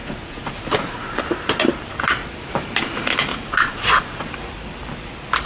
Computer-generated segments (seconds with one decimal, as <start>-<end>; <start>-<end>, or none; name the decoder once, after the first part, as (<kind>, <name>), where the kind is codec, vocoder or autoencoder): 0.0-1.2 (vocoder, Vocos); 3.3-4.3